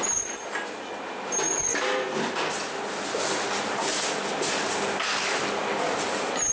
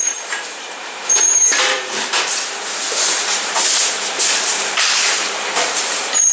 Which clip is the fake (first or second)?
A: second